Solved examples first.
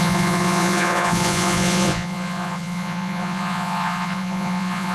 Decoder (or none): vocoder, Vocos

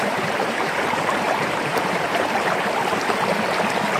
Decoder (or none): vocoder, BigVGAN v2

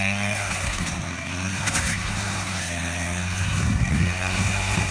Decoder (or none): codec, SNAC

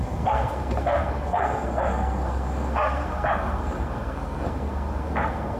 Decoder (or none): codec, SNAC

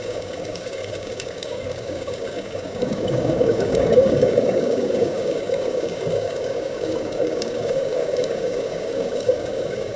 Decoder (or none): codec, DAC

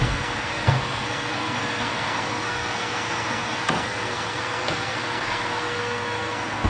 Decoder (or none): codec, SNAC